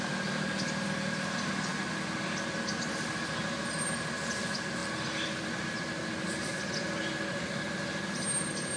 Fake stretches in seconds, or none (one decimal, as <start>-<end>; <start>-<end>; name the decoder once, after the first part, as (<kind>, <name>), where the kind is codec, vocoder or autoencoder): none